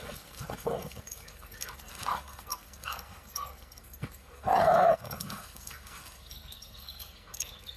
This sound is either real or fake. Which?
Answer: fake